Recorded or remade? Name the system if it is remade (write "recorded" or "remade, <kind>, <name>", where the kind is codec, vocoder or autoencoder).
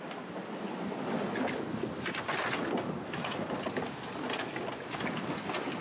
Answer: recorded